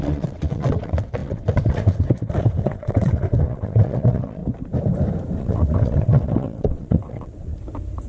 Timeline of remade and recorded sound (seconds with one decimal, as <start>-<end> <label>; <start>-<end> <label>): 0.0-4.4 remade; 4.4-5.4 recorded; 5.4-7.5 remade; 7.5-8.1 recorded